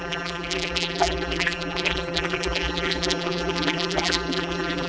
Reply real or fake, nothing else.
fake